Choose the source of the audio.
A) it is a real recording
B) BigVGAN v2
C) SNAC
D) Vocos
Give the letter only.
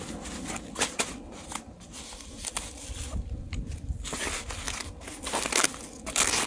A